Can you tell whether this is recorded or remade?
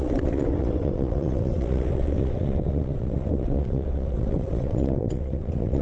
remade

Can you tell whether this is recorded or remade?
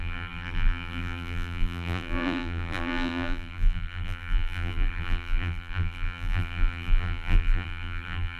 remade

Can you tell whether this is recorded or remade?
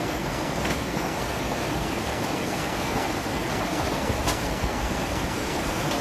remade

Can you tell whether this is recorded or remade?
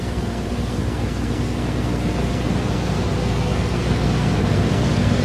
remade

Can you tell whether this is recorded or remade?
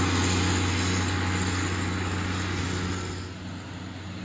recorded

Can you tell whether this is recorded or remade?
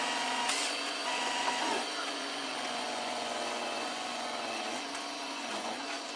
remade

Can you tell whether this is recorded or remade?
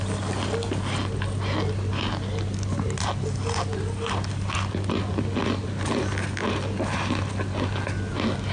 recorded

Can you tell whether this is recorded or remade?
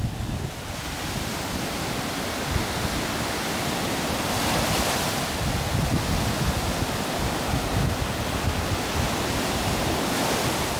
recorded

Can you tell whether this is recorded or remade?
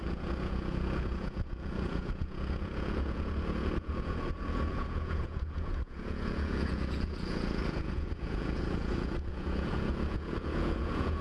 remade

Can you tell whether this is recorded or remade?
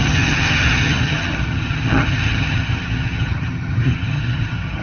remade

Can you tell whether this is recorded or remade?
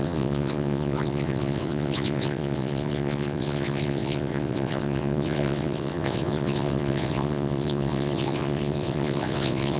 remade